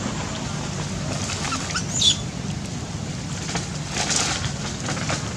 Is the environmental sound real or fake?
real